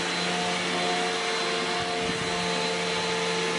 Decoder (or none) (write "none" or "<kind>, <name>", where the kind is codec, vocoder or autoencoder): none